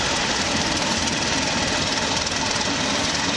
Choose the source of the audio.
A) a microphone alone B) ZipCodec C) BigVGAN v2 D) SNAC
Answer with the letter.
C